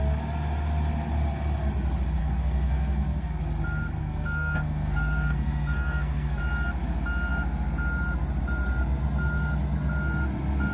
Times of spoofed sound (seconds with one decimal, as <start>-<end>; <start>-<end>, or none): 2.2-3.4; 4.0-6.4